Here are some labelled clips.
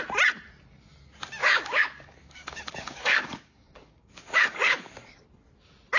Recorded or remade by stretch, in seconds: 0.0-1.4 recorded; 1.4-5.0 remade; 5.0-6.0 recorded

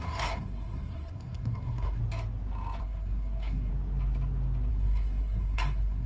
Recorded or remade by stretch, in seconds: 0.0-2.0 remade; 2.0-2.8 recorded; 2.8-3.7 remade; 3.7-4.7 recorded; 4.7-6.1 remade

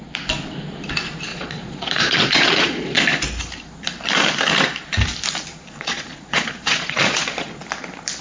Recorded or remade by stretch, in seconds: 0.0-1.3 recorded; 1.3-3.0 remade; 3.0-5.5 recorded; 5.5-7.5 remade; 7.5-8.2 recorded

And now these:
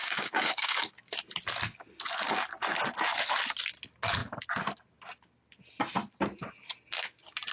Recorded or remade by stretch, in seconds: 0.0-0.9 remade; 0.9-7.5 recorded

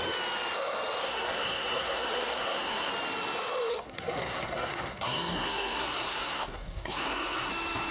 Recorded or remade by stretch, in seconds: 0.0-1.0 recorded; 1.0-2.9 remade; 2.9-3.7 recorded; 3.7-7.5 remade; 7.5-7.9 recorded

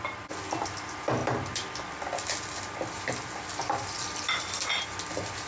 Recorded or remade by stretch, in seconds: 0.0-5.5 recorded